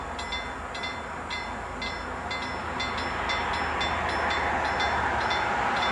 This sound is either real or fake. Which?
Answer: real